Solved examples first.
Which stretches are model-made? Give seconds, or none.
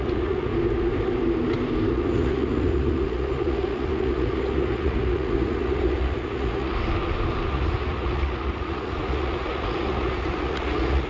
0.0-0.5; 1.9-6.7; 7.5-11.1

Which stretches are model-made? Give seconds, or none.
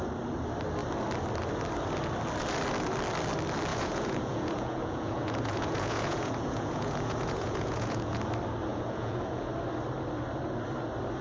3.7-8.2; 8.7-9.5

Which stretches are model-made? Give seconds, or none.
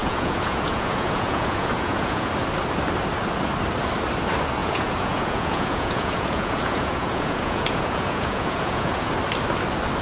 0.0-2.3; 4.6-9.1